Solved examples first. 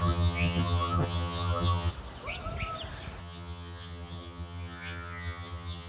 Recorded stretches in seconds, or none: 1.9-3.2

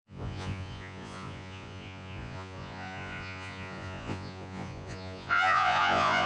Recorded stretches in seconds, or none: none

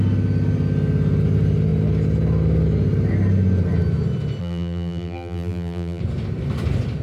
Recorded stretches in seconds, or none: 0.0-4.4; 6.0-7.0